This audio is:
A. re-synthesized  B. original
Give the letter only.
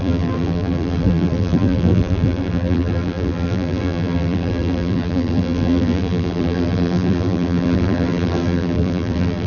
A